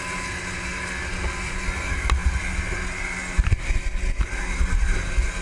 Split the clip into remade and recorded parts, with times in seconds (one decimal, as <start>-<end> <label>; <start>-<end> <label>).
0.0-5.4 recorded